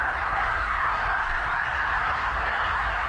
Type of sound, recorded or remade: remade